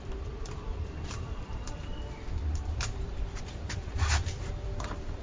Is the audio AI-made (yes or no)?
yes